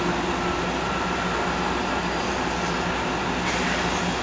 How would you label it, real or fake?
real